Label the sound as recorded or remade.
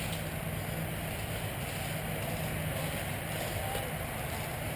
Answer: recorded